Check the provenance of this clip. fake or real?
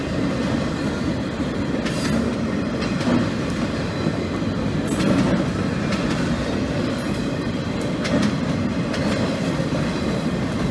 real